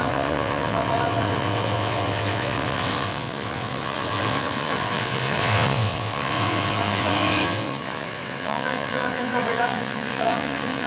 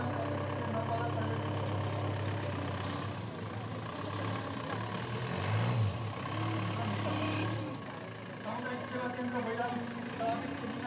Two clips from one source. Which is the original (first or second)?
second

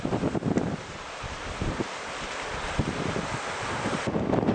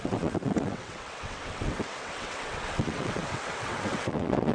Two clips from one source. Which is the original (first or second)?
first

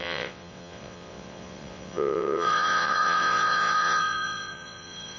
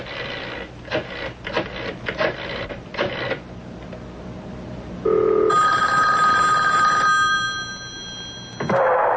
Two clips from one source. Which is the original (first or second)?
second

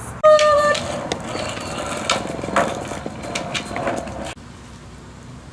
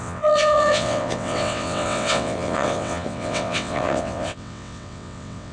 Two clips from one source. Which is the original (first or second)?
first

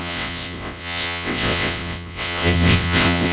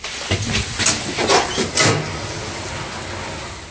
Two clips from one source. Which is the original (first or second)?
second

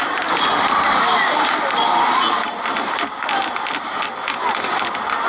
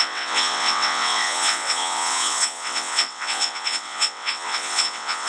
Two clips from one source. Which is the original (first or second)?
first